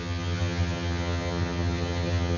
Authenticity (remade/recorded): remade